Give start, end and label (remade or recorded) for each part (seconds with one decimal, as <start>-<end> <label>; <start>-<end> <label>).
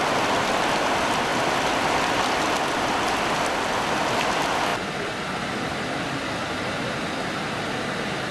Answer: 0.0-8.3 recorded